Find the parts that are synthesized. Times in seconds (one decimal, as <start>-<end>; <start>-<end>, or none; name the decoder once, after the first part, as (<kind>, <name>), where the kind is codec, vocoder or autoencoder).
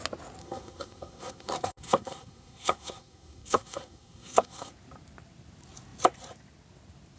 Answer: 0.4-4.7 (codec, SNAC)